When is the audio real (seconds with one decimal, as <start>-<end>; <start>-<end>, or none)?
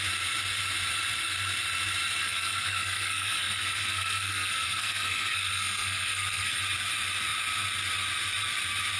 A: 0.0-2.2; 6.6-9.0